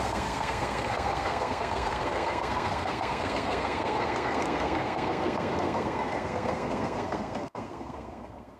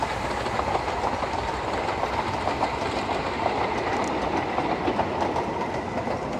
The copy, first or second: first